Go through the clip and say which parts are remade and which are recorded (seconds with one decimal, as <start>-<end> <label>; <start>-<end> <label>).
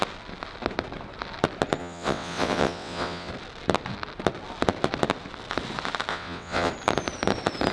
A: 0.0-1.8 recorded; 1.8-3.3 remade; 3.3-6.1 recorded; 6.1-6.7 remade; 6.7-7.7 recorded